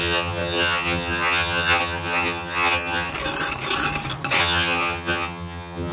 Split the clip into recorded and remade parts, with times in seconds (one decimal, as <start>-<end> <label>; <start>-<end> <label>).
0.0-3.1 remade; 3.1-4.4 recorded; 4.4-5.9 remade